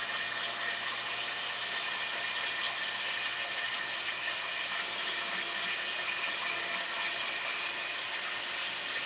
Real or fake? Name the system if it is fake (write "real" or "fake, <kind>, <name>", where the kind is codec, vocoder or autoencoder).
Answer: real